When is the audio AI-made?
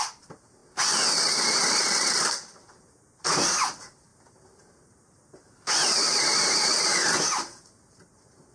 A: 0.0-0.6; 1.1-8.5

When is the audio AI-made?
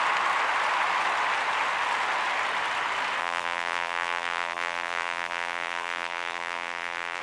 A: 3.2-7.2